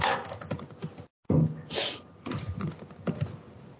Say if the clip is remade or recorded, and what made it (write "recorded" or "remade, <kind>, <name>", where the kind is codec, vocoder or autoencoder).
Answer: recorded